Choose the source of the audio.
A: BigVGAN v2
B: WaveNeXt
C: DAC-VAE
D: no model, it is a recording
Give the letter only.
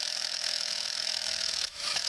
C